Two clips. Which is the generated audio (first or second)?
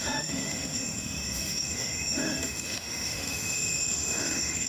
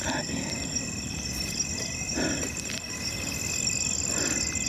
first